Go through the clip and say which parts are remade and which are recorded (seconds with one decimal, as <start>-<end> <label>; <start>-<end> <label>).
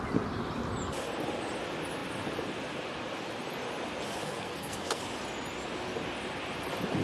0.0-4.2 recorded; 4.2-5.0 remade; 5.0-7.0 recorded